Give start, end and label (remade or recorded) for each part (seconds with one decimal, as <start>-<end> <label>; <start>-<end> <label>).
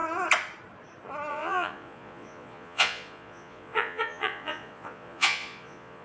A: 0.0-1.3 recorded; 1.3-6.0 remade